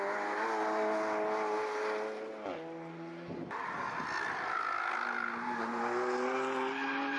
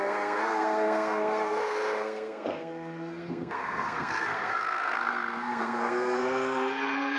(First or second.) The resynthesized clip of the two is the second